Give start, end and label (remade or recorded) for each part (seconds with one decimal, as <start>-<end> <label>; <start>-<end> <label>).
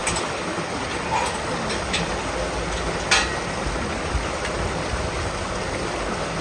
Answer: 0.0-6.4 recorded